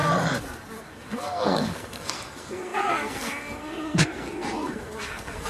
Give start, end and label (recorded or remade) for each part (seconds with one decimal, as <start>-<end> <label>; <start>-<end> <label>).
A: 0.0-0.8 recorded; 0.8-5.5 remade